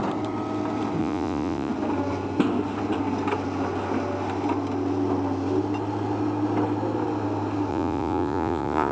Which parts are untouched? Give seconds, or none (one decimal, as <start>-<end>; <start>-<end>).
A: 0.0-1.0; 1.7-7.7